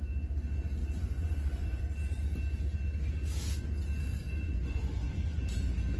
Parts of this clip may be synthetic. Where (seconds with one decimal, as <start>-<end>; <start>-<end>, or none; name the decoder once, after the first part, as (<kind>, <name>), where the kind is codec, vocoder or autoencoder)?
0.8-1.8 (vocoder, Vocos); 4.1-5.4